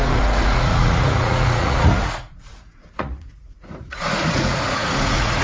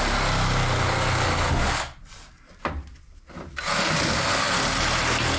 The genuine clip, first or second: second